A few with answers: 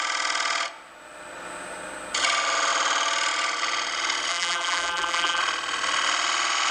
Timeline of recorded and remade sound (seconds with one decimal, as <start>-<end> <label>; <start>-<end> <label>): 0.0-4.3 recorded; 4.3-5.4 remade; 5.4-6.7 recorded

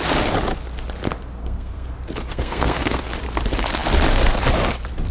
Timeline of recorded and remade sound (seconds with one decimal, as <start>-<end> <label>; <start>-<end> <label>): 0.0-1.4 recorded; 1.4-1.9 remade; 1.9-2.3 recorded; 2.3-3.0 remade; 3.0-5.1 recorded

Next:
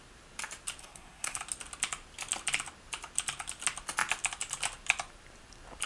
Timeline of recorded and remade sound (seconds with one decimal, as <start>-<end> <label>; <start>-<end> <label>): 0.0-0.8 recorded; 0.8-1.4 remade; 1.4-5.9 recorded

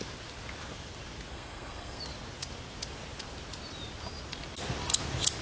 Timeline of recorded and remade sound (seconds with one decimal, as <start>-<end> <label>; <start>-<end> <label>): 0.0-1.3 recorded; 1.3-2.0 remade; 2.0-5.4 recorded

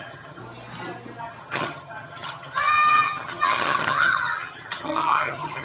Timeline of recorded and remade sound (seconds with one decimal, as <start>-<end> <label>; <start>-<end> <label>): 0.0-0.4 remade; 0.4-1.2 recorded; 1.2-5.6 remade